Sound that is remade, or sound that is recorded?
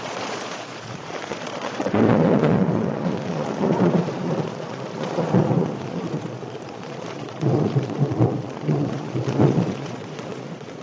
remade